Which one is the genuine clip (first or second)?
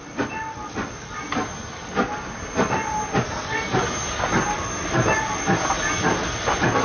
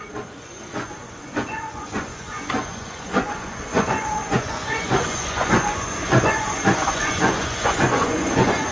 first